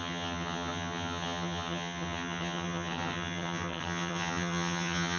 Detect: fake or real fake